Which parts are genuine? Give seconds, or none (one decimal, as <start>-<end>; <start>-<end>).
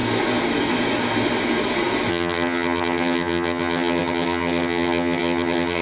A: 0.0-2.1